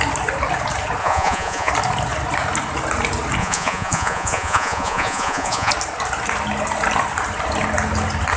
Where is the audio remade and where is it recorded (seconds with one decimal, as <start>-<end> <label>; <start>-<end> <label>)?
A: 0.0-1.0 recorded; 1.0-1.7 remade; 1.7-3.4 recorded; 3.4-5.7 remade; 5.7-8.4 recorded